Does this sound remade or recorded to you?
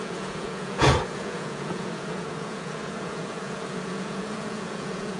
remade